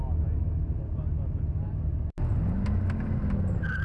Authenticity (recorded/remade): recorded